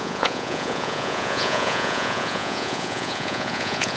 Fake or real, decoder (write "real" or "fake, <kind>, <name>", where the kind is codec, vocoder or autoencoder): fake, vocoder, Vocos